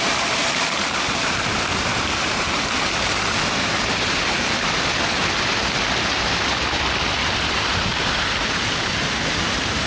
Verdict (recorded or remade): remade